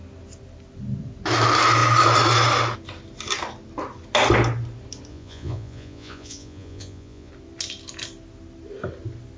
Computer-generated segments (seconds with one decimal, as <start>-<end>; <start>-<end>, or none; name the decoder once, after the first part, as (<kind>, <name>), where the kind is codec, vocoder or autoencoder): 5.1-7.3 (vocoder, Vocos)